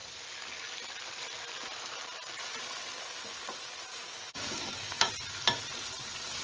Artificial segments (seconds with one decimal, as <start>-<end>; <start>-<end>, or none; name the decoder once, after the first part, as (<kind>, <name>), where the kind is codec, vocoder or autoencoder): 3.9-5.1 (codec, DAC)

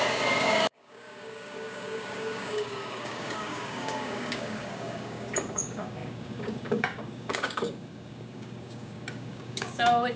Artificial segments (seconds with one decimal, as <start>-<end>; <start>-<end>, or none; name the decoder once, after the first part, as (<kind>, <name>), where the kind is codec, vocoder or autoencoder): 0.0-10.2 (codec, DAC)